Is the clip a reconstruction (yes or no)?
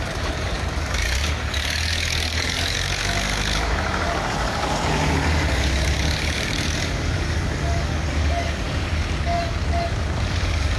yes